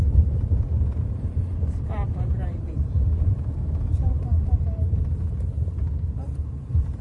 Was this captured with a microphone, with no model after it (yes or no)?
no